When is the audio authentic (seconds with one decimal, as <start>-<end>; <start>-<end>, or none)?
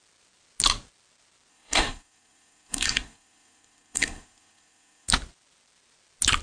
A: 0.0-1.5; 5.1-6.4